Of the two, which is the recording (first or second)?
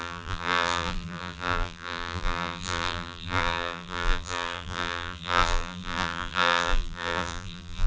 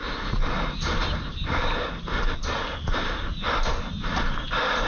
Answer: second